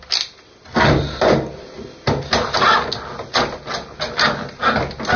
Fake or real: real